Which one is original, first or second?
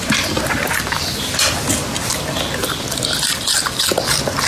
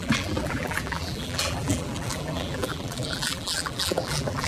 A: first